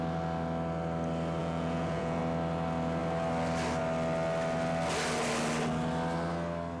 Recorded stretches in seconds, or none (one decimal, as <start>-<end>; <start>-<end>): 0.0-1.4; 2.2-6.8

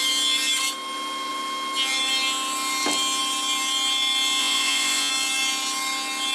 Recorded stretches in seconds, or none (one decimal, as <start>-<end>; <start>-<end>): 0.0-4.4; 5.1-6.3

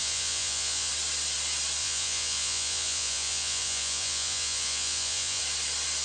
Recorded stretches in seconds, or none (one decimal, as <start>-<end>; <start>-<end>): 0.9-1.8; 5.4-6.0

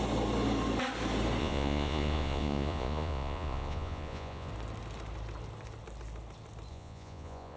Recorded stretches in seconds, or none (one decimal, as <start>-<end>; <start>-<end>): 0.0-1.4; 4.5-6.7

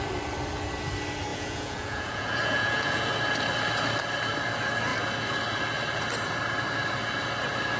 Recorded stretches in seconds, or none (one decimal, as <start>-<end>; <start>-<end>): 0.0-1.3; 3.1-7.8

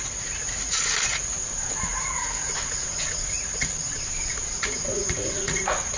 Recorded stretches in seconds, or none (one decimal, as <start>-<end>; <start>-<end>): none

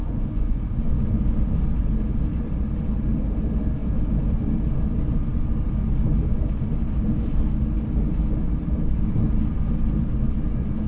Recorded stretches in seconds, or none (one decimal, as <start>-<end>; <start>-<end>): 0.8-10.9

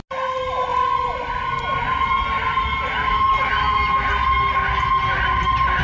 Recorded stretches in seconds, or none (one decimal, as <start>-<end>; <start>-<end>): 0.0-0.7; 1.3-5.8